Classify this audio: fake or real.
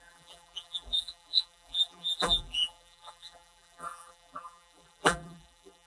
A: fake